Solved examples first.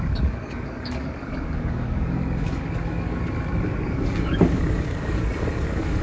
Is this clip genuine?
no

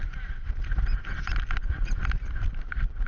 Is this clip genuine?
yes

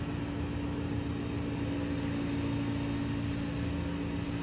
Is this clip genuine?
yes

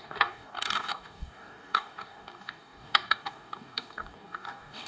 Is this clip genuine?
no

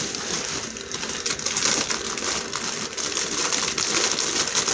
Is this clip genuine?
yes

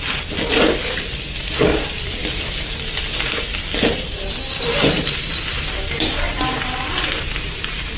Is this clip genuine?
yes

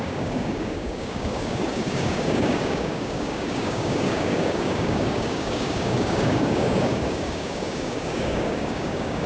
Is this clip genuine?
no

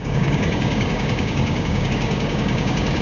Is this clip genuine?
no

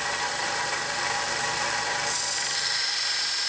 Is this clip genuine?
yes